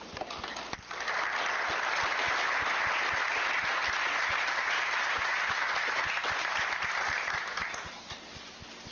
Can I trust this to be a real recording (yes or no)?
yes